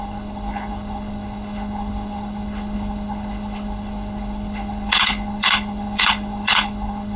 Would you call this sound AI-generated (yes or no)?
yes